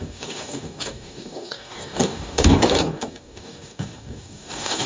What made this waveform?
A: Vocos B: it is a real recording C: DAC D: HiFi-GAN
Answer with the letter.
C